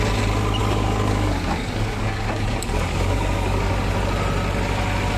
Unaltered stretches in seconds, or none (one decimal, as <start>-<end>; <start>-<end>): 0.0-0.6; 3.7-5.2